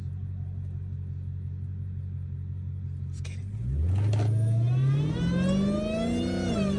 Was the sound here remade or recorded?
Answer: recorded